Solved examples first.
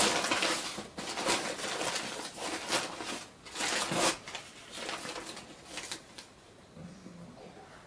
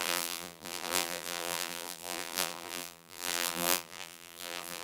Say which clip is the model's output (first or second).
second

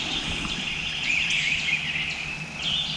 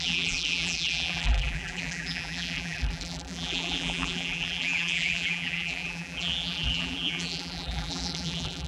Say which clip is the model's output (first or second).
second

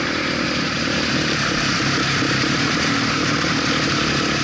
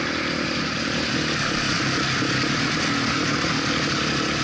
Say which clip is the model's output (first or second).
first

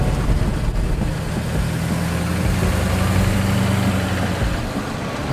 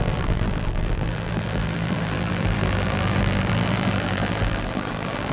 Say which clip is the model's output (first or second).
second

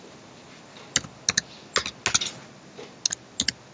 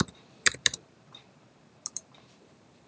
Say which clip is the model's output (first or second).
second